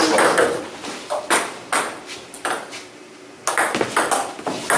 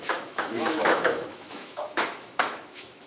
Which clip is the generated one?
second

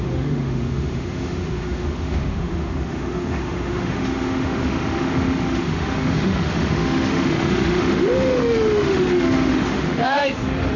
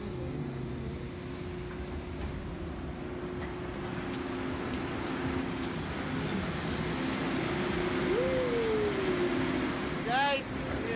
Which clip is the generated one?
first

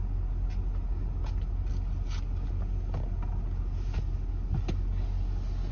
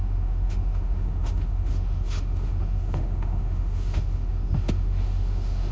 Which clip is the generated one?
second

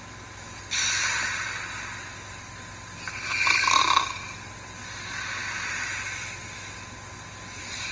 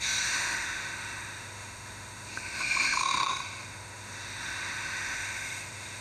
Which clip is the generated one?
second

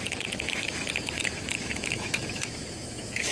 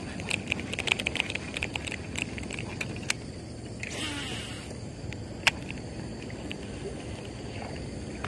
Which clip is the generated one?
first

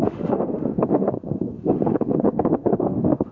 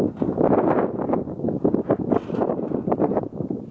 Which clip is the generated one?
first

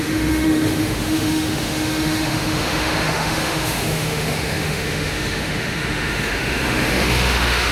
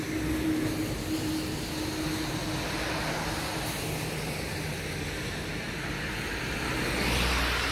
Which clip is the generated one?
first